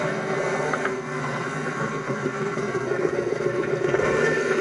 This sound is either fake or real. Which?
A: fake